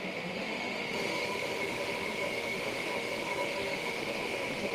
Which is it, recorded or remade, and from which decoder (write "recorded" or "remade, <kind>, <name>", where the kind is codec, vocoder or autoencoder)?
remade, autoencoder, DAC-VAE